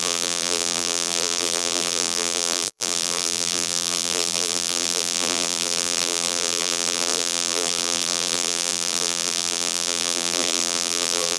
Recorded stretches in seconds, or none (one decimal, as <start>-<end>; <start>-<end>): none